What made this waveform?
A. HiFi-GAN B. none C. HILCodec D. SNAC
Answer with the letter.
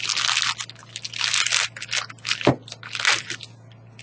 B